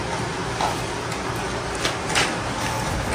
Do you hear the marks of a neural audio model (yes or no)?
no